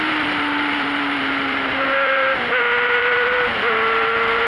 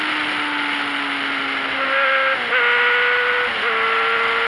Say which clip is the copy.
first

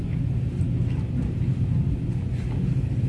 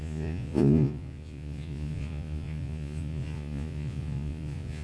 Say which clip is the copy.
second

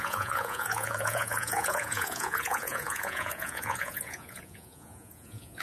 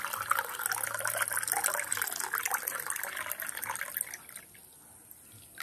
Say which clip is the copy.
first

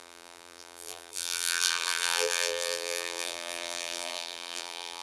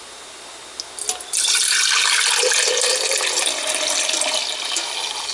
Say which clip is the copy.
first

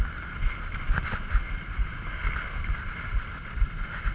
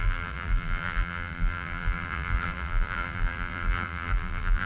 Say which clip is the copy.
second